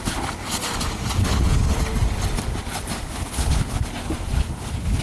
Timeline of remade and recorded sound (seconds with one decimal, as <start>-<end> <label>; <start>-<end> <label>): 0.0-1.2 recorded; 1.2-1.8 remade; 1.8-3.2 recorded; 3.2-3.8 remade; 3.8-4.4 recorded; 4.4-5.0 remade